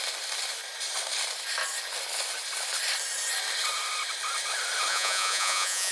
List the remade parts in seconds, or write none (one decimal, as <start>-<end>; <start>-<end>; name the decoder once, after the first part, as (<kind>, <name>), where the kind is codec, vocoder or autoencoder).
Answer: 4.9-5.9 (vocoder, Vocos)